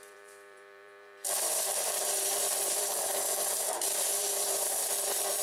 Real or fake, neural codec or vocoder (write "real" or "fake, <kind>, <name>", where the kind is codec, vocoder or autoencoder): fake, vocoder, BigVGAN v2